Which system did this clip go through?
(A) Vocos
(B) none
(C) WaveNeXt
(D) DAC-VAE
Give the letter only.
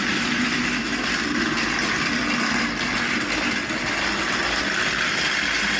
B